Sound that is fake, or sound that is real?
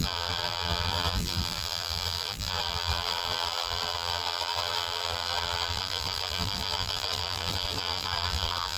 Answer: fake